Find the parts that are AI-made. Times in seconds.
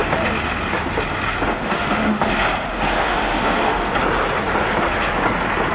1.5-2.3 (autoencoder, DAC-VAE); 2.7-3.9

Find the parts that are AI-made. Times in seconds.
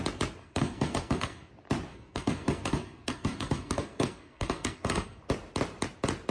0.4-1.5 (codec, SNAC); 1.9-5.2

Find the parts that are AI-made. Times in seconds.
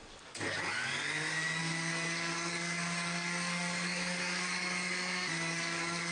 0.0-6.1 (codec, DAC)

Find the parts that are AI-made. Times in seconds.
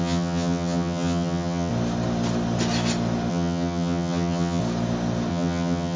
0.0-1.7 (vocoder, HiFi-GAN); 3.3-4.6; 5.3-6.0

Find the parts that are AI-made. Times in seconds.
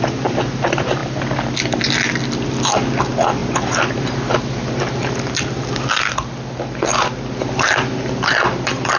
none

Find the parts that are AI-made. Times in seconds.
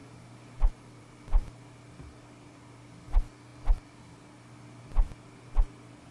none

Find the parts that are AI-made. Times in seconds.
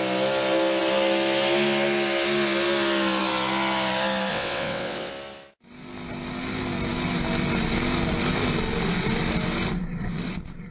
4.3-5.1 (vocoder, WaveNeXt)